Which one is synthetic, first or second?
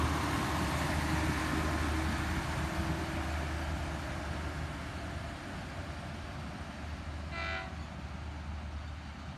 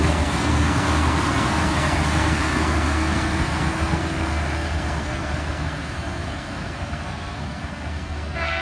second